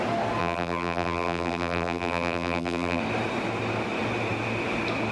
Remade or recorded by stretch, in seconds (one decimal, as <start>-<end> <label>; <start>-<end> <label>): 0.0-0.4 recorded; 0.4-3.0 remade; 3.0-5.1 recorded

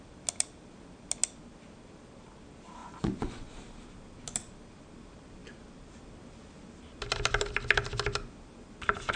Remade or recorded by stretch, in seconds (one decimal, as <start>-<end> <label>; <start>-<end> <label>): 0.0-2.8 recorded; 2.8-3.5 remade; 3.5-9.2 recorded

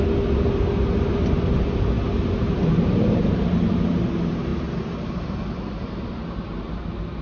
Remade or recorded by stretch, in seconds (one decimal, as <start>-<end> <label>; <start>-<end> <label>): 0.0-7.2 recorded

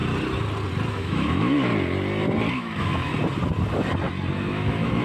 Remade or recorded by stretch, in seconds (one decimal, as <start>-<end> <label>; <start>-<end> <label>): 0.0-0.9 recorded; 0.9-1.7 remade; 1.7-2.5 recorded; 2.5-3.1 remade; 3.1-4.3 recorded; 4.3-5.0 remade

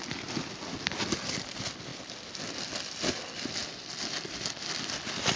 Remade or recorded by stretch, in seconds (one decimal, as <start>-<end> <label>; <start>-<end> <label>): 0.0-5.4 recorded